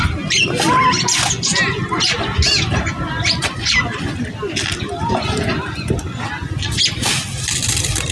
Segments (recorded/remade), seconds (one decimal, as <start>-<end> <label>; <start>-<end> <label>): 0.0-8.1 recorded